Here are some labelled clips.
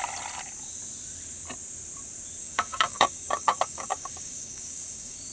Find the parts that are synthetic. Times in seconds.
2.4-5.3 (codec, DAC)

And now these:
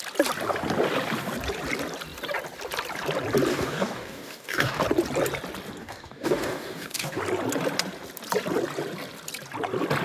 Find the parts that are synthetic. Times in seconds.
3.5-4.8 (codec, DAC); 5.8-7.2

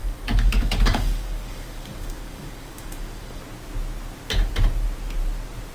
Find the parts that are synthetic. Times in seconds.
0.0-3.4 (codec, DAC)